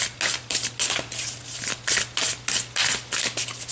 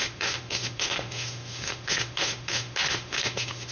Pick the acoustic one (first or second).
first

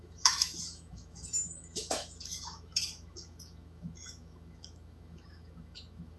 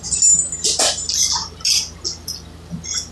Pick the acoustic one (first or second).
second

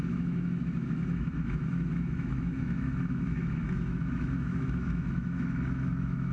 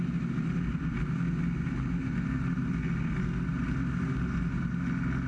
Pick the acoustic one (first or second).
second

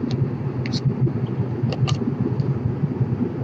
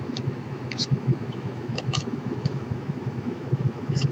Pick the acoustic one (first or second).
first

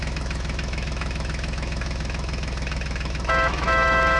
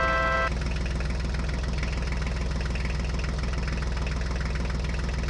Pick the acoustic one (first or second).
second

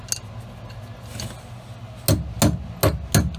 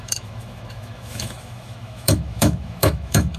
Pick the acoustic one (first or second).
first